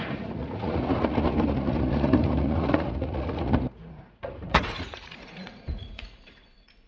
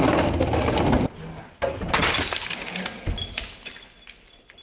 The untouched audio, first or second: second